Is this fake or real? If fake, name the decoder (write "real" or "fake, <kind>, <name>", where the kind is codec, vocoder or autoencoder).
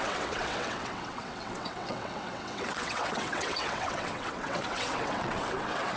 fake, vocoder, WaveNeXt